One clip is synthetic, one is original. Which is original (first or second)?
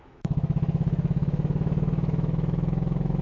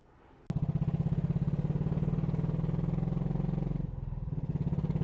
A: second